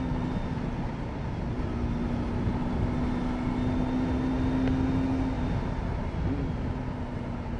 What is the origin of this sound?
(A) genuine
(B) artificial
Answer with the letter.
A